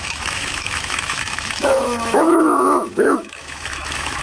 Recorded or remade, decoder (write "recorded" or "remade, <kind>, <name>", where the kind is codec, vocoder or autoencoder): remade, autoencoder, DAC-VAE